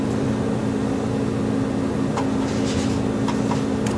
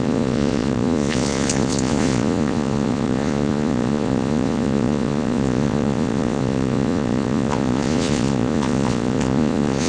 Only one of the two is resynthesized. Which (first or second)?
second